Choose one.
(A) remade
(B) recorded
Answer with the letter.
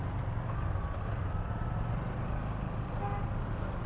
B